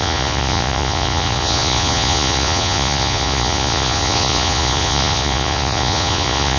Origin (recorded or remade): remade